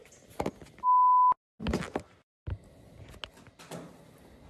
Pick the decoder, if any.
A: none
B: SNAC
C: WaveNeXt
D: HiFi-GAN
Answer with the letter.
A